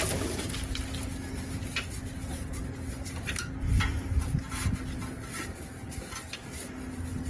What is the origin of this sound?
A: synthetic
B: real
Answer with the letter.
B